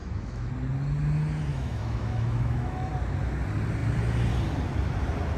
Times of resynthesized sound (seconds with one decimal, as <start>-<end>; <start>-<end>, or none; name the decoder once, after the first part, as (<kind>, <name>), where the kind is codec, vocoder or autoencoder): 0.0-0.5 (autoencoder, DAC-VAE); 1.5-2.9